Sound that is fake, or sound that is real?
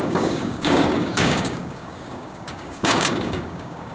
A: fake